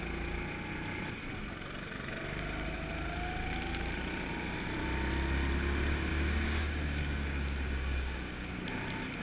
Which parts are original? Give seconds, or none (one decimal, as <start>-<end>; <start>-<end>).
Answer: 0.0-6.1; 8.6-9.2